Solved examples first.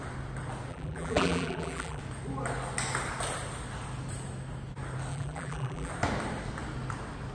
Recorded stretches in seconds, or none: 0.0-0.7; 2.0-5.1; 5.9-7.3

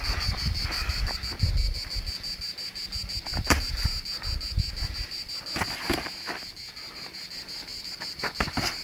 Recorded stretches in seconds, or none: 0.0-7.7; 8.2-8.8

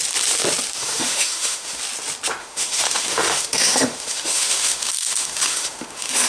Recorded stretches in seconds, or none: 0.0-0.8; 1.8-2.4

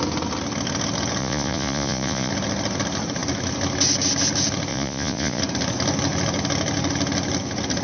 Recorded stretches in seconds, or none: 0.0-1.2; 2.3-4.7; 5.4-7.8

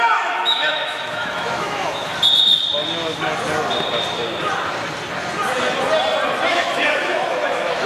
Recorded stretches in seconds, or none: 2.1-6.5

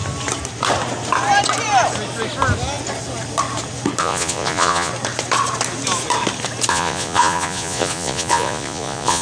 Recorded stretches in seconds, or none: 0.0-4.0; 4.9-6.7

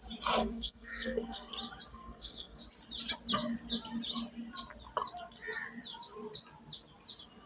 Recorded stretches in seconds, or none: 0.0-0.4; 1.5-1.9; 2.6-7.5

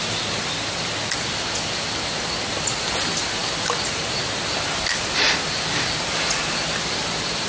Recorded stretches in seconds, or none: 0.0-7.5